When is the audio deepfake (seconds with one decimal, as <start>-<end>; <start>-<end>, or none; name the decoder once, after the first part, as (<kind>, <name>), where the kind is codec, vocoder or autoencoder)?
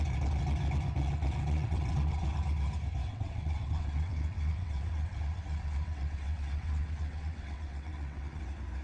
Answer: 1.0-2.4 (vocoder, WaveNeXt); 3.1-8.4